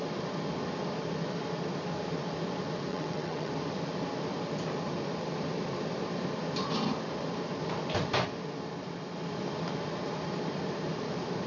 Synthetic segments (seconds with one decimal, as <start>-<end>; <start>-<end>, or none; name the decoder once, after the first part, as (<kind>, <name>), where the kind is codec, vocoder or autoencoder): 2.9-3.5 (vocoder, WaveNeXt)